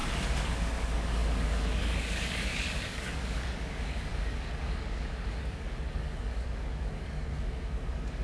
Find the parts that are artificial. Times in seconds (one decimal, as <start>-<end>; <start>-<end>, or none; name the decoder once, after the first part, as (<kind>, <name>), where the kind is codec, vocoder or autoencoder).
0.0-8.2 (codec, DAC)